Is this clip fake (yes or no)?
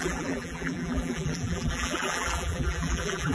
yes